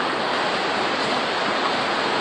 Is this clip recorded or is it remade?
recorded